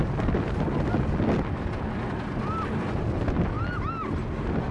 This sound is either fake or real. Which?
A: real